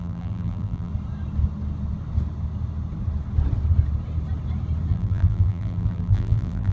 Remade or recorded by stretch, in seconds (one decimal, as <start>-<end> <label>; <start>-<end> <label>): 0.0-0.9 remade; 0.9-4.9 recorded; 4.9-6.7 remade